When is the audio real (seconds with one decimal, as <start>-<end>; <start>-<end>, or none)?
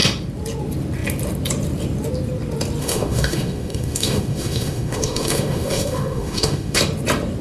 0.0-2.8; 6.8-7.4